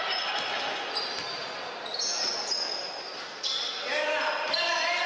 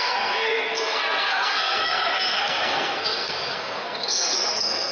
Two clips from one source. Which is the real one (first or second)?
first